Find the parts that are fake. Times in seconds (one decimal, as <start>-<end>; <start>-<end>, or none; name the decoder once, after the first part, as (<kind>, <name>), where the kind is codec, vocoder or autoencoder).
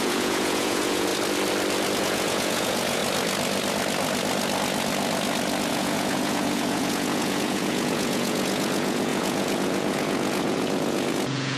0.0-1.1 (vocoder, Vocos); 2.0-3.0; 5.7-11.6